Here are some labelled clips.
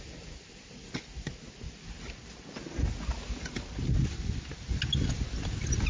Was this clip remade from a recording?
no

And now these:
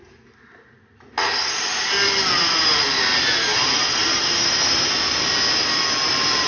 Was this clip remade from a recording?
no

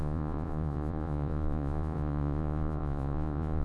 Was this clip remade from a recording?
yes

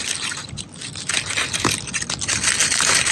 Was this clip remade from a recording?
no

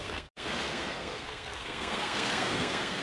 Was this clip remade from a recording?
yes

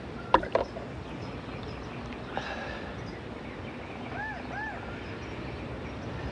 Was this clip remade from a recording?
no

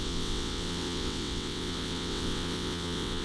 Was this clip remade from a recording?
yes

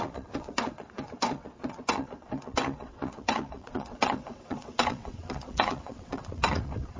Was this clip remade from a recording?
yes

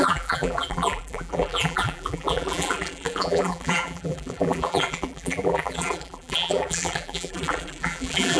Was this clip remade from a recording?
yes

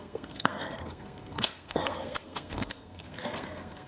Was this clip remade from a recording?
yes